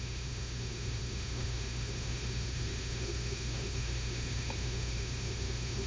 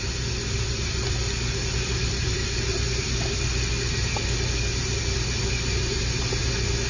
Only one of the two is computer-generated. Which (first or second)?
first